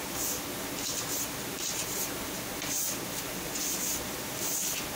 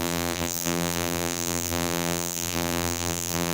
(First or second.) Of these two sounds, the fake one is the second